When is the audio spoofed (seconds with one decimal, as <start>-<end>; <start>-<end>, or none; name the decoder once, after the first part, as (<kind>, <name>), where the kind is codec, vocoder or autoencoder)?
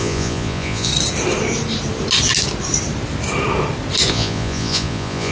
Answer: 0.0-0.9 (vocoder, Vocos); 4.1-5.3